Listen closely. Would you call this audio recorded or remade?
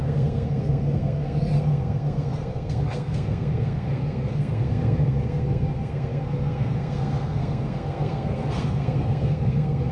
remade